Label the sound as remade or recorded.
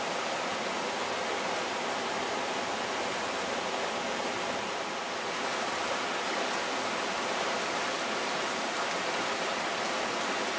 recorded